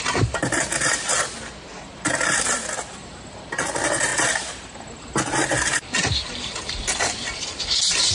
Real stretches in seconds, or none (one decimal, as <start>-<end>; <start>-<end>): 1.7-2.5; 4.1-4.9